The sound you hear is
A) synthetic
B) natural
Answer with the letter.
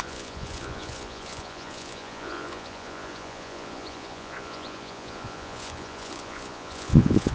A